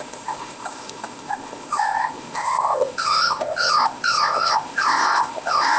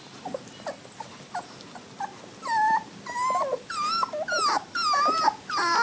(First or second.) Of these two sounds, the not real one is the first